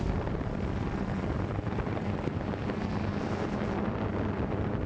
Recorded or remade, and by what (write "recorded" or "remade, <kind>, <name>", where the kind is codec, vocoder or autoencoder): remade, vocoder, BigVGAN v2